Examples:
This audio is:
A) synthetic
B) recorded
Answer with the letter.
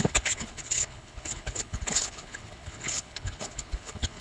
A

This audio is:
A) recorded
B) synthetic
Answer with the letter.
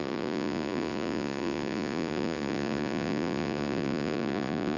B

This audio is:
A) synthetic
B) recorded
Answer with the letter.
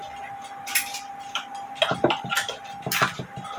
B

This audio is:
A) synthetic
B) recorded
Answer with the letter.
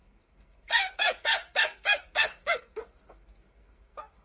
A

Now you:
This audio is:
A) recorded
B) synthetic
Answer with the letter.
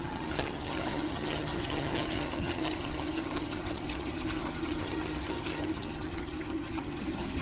B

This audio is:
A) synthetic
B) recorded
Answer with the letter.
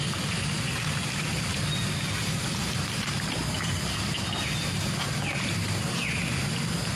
B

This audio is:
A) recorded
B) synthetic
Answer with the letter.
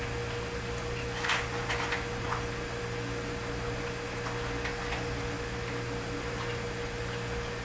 A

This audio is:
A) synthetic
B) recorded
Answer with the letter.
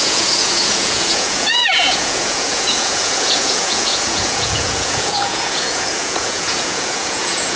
A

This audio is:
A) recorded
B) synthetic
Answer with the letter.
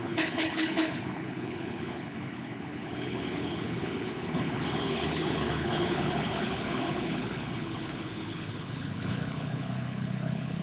B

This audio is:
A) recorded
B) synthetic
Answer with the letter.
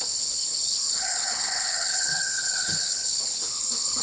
B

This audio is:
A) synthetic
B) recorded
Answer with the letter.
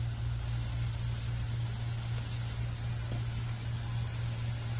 B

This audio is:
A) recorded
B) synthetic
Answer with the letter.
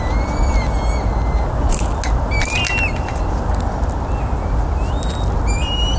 A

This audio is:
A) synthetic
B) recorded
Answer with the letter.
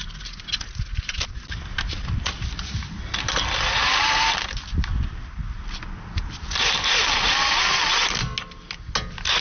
B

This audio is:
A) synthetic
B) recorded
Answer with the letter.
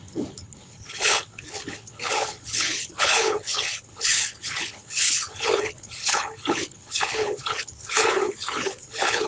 A